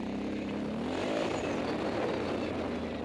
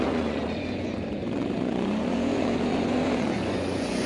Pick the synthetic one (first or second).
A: second